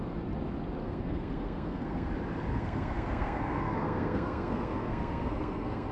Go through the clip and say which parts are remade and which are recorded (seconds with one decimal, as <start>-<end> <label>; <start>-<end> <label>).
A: 0.0-0.8 recorded; 0.8-2.1 remade; 2.1-2.5 recorded; 2.5-5.9 remade